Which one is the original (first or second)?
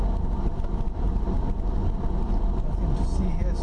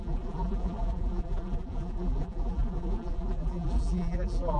first